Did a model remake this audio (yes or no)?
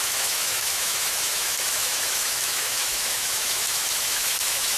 yes